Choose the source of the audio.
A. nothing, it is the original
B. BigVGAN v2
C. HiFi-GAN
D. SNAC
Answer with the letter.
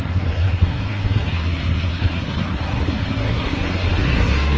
D